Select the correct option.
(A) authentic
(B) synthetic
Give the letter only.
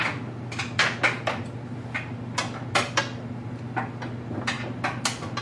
A